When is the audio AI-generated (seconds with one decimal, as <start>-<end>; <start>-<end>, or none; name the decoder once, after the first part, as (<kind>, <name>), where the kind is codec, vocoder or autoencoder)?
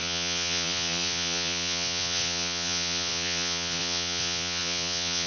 0.0-5.3 (vocoder, Vocos)